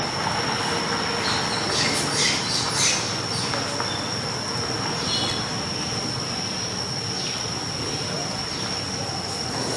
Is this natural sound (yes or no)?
yes